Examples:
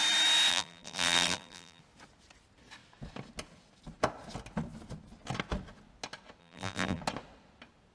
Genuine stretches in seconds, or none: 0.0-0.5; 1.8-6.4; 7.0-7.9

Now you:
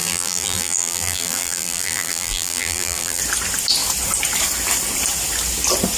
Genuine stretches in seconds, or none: 3.2-6.0

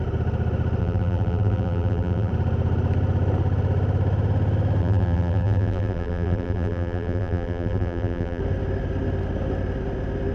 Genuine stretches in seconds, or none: 0.0-0.8; 2.3-4.8; 8.4-10.3

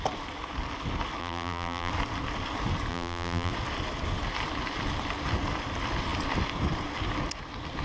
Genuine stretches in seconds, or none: 0.0-1.2; 1.9-2.9; 3.5-7.8

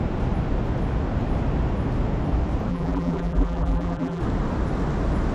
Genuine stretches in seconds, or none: 0.0-2.7; 4.2-5.3

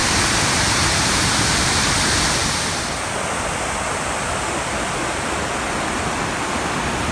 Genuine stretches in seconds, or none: 1.4-7.1